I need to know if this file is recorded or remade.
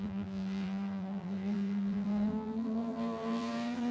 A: remade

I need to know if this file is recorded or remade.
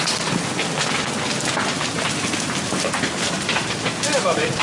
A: recorded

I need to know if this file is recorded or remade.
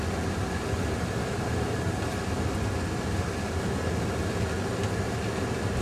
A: recorded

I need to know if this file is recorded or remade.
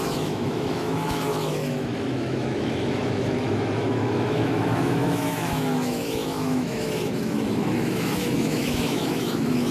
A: remade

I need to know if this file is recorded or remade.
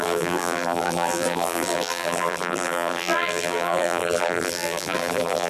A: remade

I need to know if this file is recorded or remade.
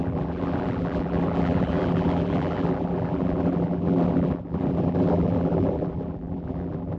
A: remade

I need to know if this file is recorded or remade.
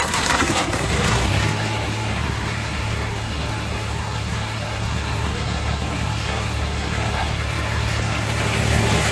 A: remade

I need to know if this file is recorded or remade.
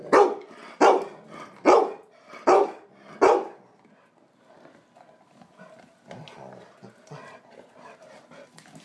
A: recorded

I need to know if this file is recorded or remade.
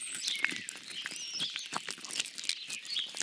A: recorded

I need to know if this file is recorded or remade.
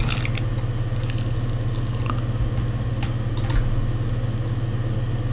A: recorded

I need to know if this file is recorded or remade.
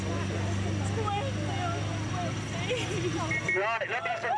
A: recorded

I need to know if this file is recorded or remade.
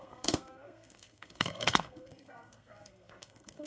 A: remade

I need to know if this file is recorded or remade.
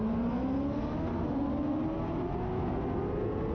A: recorded